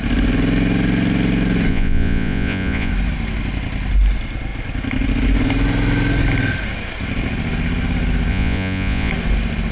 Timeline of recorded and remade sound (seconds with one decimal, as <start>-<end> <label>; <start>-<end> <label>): 0.0-1.7 recorded; 1.7-2.9 remade; 2.9-8.3 recorded; 8.3-9.1 remade; 9.1-9.7 recorded